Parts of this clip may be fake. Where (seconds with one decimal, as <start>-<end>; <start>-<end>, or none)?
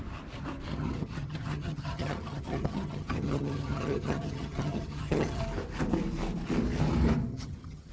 0.7-5.4; 7.3-7.9